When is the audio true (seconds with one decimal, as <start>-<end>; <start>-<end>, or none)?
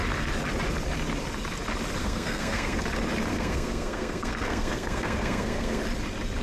0.0-2.0; 2.8-3.3; 5.8-6.4